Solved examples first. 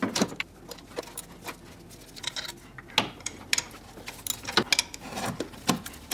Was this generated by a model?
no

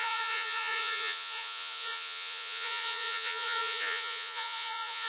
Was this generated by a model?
yes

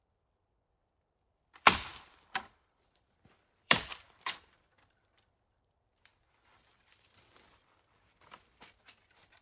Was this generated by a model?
yes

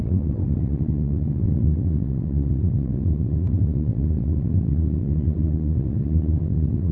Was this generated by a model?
yes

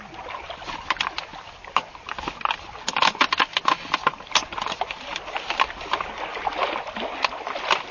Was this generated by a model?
no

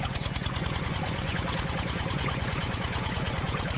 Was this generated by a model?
yes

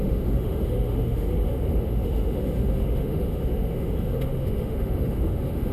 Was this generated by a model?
yes